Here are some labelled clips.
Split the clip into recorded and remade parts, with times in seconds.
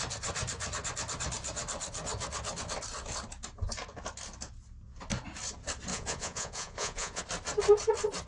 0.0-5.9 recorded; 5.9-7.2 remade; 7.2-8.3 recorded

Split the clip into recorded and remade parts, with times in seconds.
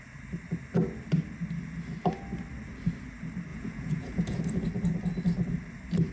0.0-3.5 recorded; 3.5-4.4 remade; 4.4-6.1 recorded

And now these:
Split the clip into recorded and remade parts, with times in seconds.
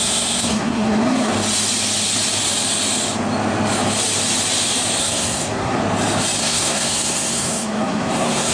0.0-1.3 remade; 1.3-5.0 recorded; 5.0-5.8 remade; 5.8-6.4 recorded; 6.4-8.5 remade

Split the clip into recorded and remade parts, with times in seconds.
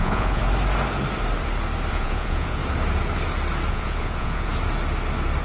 0.0-0.4 remade; 0.4-1.9 recorded; 1.9-2.6 remade; 2.6-3.7 recorded; 3.7-4.5 remade; 4.5-5.4 recorded